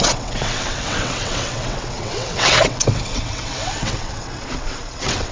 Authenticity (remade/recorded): remade